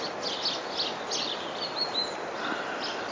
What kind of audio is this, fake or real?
real